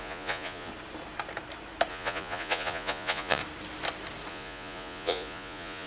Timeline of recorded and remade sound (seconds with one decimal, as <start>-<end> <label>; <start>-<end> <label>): 0.0-0.7 remade; 0.7-1.9 recorded; 1.9-3.4 remade; 3.4-4.3 recorded; 4.3-5.9 remade